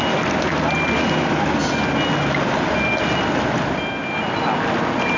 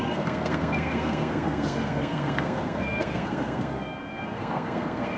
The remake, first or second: second